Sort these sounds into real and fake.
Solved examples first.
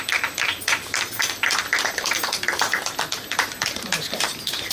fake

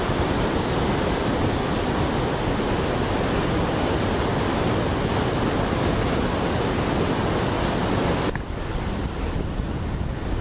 real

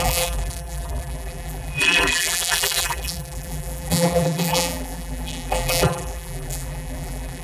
fake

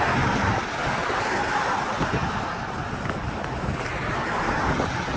real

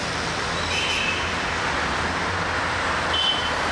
real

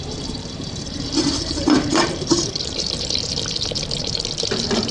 fake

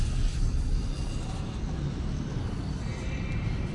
real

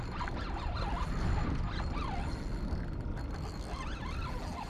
real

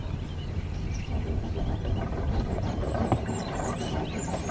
fake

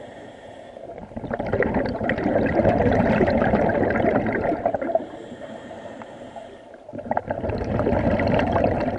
fake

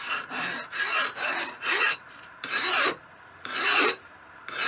fake